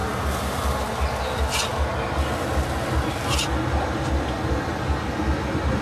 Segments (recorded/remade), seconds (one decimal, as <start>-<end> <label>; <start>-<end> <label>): 0.0-5.8 recorded